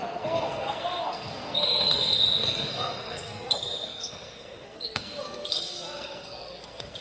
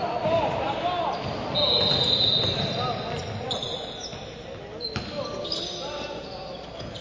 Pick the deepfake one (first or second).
first